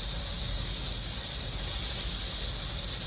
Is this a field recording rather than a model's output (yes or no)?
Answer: yes